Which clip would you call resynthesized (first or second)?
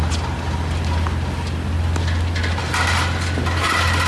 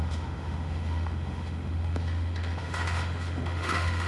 second